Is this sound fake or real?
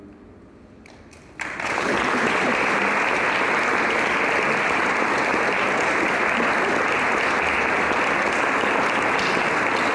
real